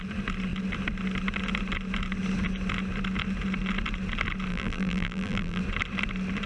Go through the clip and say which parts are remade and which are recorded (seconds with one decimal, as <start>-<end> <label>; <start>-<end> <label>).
0.0-4.5 recorded; 4.5-5.6 remade; 5.6-6.5 recorded